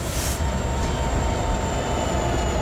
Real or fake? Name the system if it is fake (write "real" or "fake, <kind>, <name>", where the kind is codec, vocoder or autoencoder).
fake, vocoder, BigVGAN v2